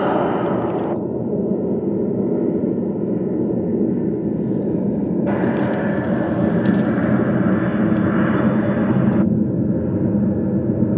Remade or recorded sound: recorded